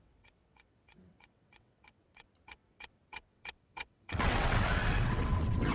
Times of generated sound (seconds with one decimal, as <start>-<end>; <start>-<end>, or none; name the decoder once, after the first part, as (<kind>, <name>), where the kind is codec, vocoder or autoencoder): 0.0-5.7 (vocoder, WaveNeXt)